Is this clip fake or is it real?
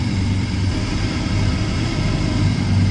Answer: fake